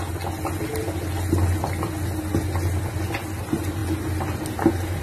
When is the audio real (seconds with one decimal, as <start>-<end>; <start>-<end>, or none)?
0.0-5.0